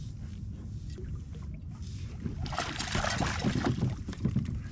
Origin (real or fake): real